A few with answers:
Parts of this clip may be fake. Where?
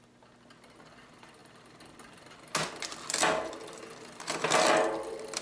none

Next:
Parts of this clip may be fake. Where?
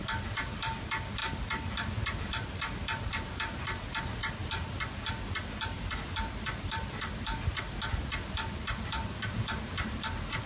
none